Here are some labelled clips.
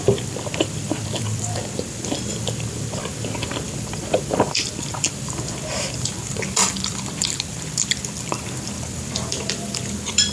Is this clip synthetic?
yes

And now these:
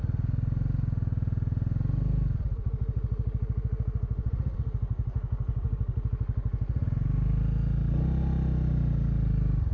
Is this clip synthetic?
no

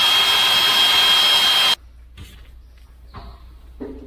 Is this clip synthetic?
no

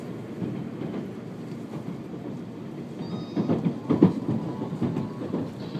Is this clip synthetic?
no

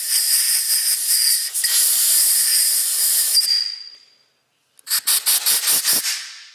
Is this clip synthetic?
no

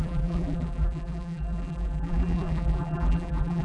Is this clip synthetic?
yes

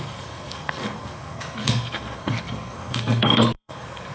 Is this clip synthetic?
yes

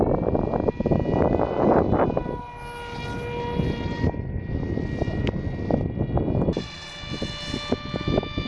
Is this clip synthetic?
no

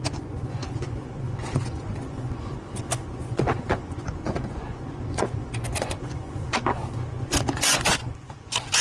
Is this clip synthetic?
yes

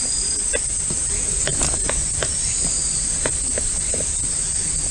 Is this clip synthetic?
no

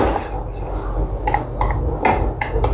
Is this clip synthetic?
no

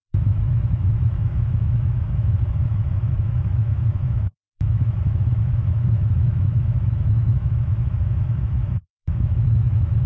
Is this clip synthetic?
yes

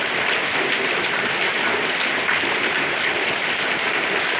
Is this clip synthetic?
no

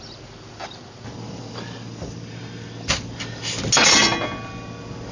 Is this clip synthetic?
no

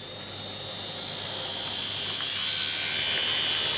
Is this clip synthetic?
no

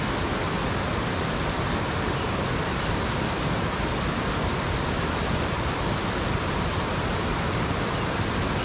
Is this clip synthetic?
no